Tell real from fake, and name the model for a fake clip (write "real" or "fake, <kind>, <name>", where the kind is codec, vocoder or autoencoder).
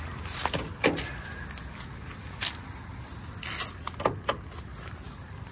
real